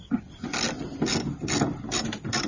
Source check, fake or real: real